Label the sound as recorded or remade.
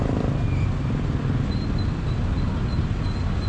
recorded